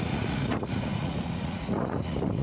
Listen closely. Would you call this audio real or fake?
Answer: fake